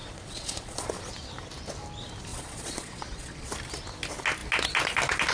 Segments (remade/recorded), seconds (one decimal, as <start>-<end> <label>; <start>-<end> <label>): 0.0-1.1 remade; 1.1-2.3 recorded; 2.3-3.5 remade; 3.5-5.3 recorded